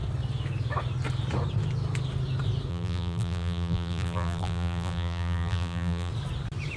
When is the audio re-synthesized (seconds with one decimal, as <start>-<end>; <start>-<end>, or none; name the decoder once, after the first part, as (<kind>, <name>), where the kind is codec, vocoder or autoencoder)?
2.7-6.1 (vocoder, BigVGAN v2)